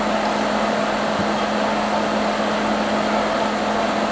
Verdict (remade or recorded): recorded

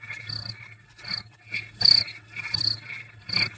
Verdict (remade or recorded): recorded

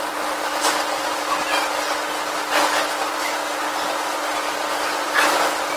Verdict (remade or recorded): recorded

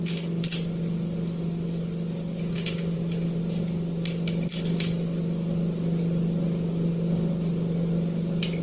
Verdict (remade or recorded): recorded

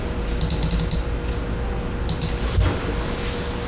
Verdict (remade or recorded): recorded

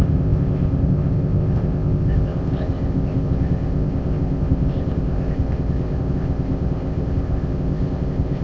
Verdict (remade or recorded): remade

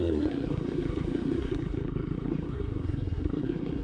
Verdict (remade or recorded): remade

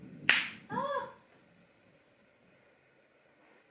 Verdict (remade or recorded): recorded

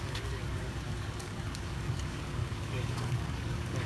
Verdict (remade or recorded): remade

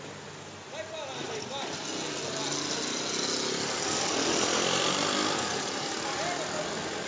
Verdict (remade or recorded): recorded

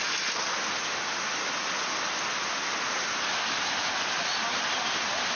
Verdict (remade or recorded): recorded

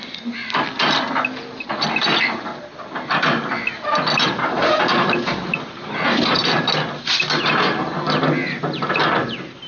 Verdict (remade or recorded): recorded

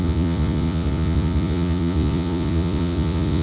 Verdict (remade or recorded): remade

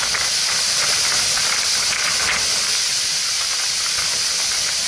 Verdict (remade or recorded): recorded